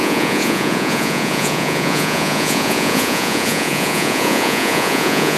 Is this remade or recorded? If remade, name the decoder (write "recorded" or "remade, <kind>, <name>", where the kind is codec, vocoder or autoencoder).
remade, vocoder, Vocos